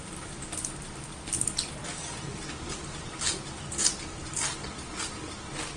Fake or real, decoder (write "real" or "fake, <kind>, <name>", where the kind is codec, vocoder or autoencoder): real